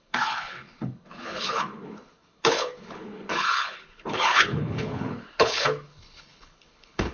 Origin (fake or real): fake